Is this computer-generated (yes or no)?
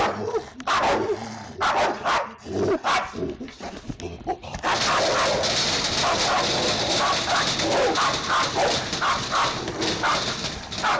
no